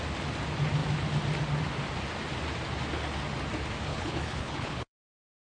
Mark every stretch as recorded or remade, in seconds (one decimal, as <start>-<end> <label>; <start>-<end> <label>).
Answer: 0.0-3.9 recorded; 3.9-5.1 remade; 5.1-5.5 recorded